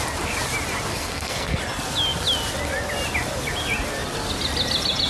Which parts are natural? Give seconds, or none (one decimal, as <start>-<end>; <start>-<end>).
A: 0.0-0.9; 1.6-5.1